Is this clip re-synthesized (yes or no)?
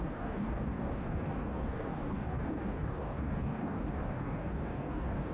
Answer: yes